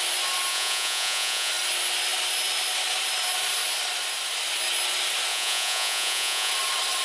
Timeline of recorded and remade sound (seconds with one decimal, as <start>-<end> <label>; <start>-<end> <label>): 0.0-0.5 recorded; 0.5-1.5 remade; 1.5-5.3 recorded; 5.3-6.5 remade; 6.5-7.0 recorded